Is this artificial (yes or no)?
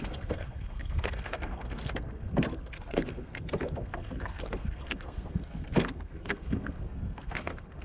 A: yes